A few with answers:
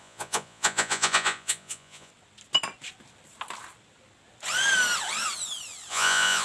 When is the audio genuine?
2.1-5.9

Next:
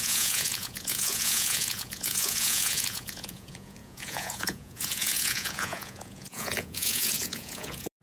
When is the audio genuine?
none

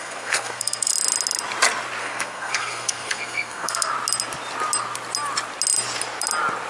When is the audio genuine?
0.9-2.0; 3.9-6.7

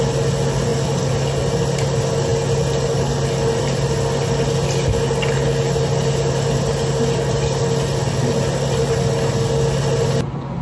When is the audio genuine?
0.0-10.6

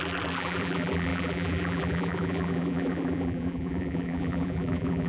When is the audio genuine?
none